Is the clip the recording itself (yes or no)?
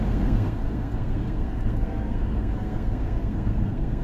no